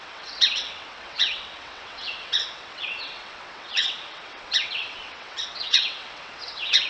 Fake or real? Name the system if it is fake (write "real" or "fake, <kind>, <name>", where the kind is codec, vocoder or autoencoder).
fake, vocoder, WaveNeXt